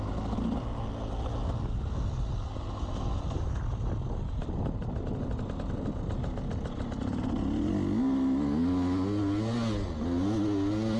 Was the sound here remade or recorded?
recorded